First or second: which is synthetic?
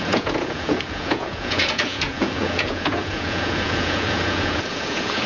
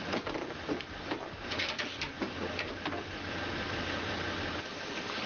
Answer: first